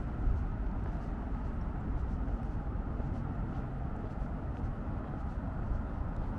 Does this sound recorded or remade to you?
recorded